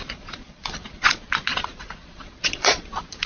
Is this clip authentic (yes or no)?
no